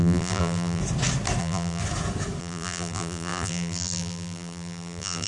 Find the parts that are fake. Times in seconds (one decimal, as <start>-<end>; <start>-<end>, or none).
0.0-0.8; 1.4-1.8; 2.4-5.3